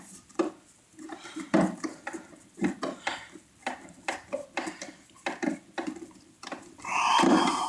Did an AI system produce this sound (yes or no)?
yes